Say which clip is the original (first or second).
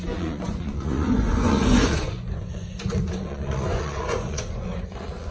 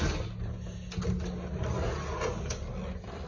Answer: second